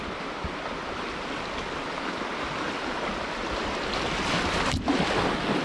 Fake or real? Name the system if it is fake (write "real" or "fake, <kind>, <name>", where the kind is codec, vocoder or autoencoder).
real